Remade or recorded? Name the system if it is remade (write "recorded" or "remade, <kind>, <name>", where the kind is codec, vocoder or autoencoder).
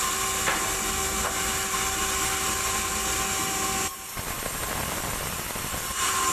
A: recorded